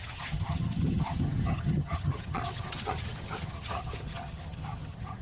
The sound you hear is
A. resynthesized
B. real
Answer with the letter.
A